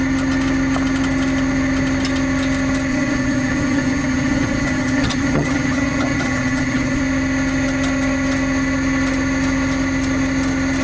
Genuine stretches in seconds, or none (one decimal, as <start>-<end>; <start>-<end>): 0.0-2.9; 7.0-10.8